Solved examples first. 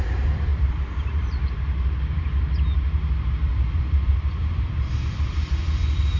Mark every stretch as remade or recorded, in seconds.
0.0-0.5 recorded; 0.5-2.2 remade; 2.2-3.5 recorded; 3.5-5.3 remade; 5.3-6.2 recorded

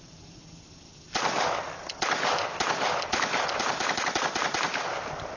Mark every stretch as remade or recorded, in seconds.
0.0-0.4 remade; 0.4-3.6 recorded; 3.6-5.4 remade